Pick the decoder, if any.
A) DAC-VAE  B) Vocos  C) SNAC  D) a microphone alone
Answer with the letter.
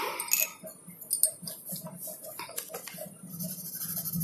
D